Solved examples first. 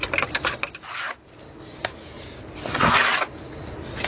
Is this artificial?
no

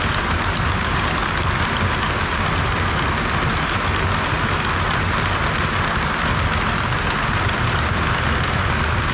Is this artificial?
no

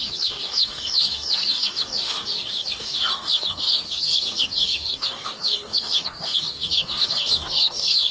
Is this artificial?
yes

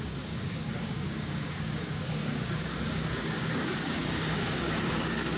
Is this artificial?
yes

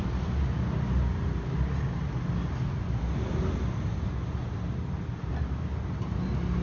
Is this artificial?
no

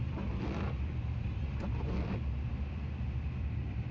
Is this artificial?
no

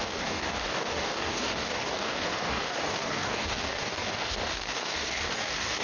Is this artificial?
yes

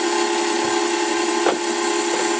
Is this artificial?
no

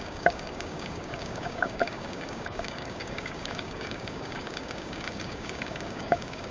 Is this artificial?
yes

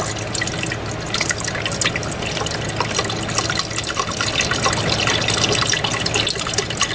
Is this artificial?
no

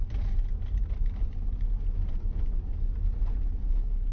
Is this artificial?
no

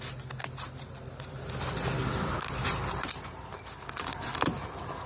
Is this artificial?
no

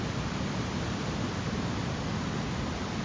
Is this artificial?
no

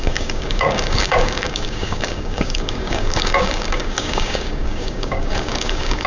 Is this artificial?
yes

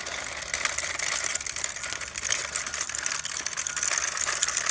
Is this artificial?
no